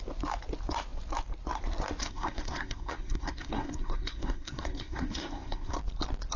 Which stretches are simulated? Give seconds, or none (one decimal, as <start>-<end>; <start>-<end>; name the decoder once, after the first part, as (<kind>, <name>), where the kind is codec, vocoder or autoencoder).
2.0-5.8 (codec, SNAC)